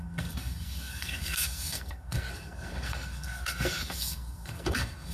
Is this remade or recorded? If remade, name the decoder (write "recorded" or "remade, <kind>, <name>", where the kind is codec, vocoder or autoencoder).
remade, codec, SNAC